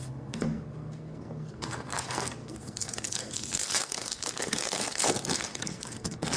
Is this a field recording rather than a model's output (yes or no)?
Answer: no